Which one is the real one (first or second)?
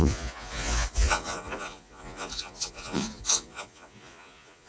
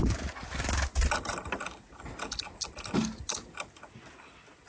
second